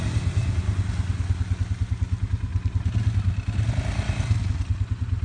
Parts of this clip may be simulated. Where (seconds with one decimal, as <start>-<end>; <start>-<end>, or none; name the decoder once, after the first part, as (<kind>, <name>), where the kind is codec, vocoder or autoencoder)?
none